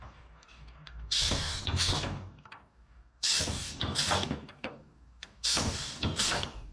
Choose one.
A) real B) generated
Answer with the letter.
B